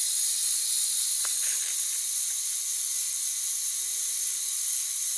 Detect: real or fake real